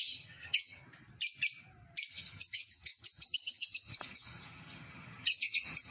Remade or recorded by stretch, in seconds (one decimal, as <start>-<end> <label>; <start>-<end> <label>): 0.0-0.8 remade; 0.8-2.1 recorded; 2.1-5.9 remade